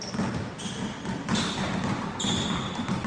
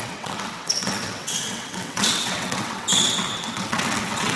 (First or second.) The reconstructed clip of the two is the second